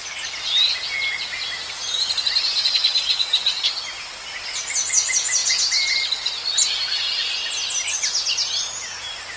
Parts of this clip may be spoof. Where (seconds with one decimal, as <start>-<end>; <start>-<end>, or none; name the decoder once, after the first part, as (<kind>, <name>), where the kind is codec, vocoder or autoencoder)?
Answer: none